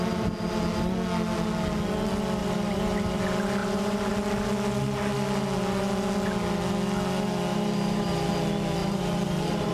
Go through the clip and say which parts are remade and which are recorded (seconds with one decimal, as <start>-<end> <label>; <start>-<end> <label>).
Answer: 0.0-2.4 recorded; 2.4-3.2 remade; 3.2-3.6 recorded; 3.6-4.1 remade; 4.1-7.5 recorded; 7.5-8.3 remade; 8.3-8.8 recorded; 8.8-9.7 remade